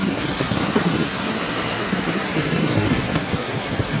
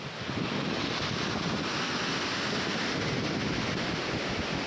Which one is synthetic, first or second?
first